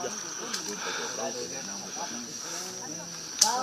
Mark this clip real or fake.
real